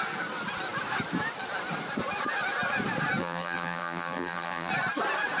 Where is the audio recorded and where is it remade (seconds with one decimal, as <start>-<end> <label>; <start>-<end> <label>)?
0.0-3.2 recorded; 3.2-4.7 remade; 4.7-5.4 recorded